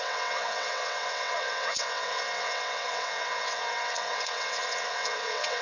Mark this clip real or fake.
fake